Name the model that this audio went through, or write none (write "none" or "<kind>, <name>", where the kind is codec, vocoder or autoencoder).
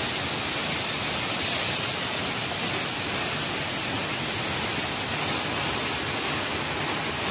none